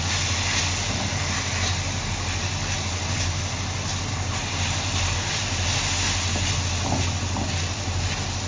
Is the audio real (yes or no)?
yes